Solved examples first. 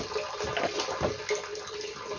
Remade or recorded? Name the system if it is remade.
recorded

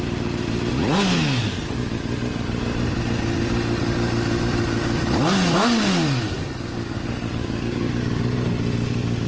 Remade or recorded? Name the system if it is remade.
recorded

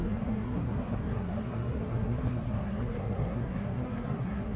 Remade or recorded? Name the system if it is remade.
remade, codec, SNAC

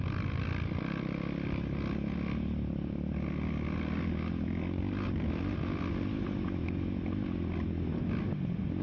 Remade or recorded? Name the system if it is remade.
recorded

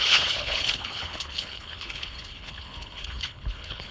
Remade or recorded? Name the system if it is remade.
remade, codec, HILCodec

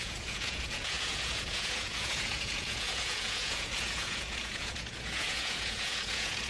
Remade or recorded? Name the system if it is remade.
remade, vocoder, Vocos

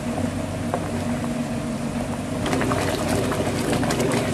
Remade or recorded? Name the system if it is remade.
recorded